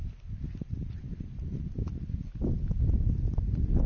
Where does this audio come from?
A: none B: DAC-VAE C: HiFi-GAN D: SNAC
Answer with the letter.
A